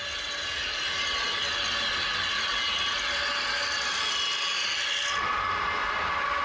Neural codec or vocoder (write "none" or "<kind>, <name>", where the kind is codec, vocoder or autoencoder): none